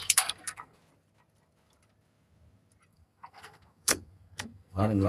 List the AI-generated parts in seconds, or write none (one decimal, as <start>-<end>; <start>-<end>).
0.0-0.8; 2.9-5.1